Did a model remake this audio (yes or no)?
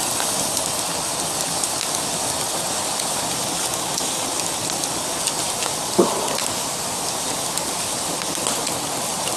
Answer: no